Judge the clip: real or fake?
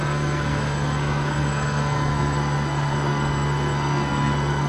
fake